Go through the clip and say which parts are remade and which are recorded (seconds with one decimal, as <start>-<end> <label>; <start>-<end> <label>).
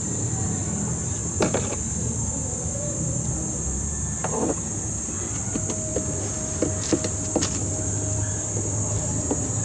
0.0-9.6 recorded